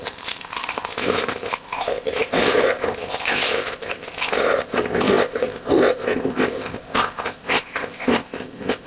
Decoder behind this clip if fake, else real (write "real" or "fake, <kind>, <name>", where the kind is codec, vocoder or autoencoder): fake, codec, ZipCodec